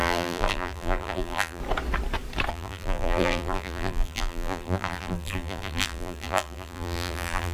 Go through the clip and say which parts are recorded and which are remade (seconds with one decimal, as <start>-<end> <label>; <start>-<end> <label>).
0.0-1.6 remade; 1.6-2.5 recorded; 2.5-7.5 remade